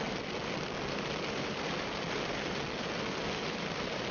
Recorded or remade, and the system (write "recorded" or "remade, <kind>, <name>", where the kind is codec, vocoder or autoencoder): recorded